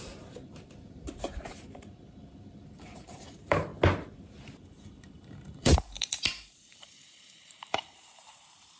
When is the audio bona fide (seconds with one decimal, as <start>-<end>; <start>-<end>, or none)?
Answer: 3.7-4.2